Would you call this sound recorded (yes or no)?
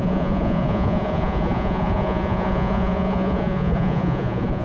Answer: no